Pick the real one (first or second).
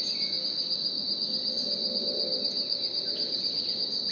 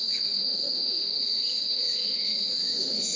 first